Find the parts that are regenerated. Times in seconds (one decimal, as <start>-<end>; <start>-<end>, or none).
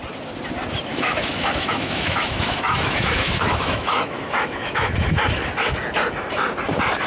0.9-5.2